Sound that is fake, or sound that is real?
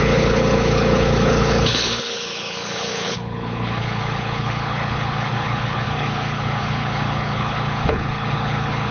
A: fake